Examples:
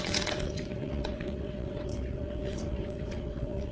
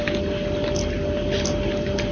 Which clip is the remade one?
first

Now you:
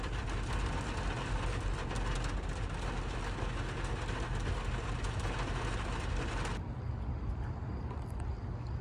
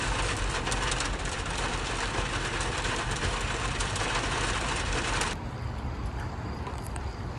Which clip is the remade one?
second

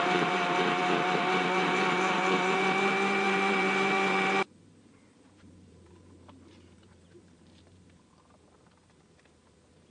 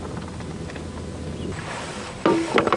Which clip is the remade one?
first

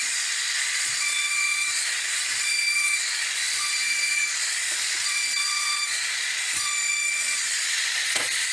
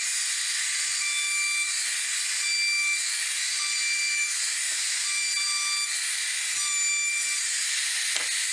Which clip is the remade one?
first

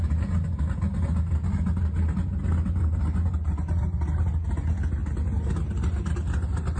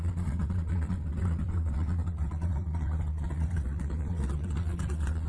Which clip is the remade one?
second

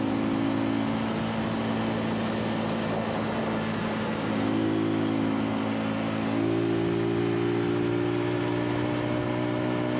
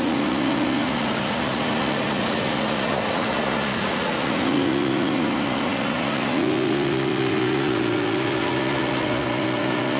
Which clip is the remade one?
second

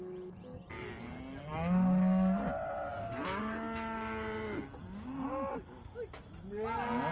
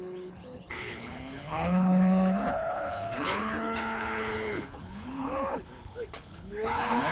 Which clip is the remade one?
second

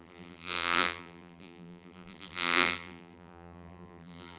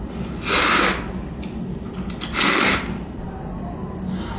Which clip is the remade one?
first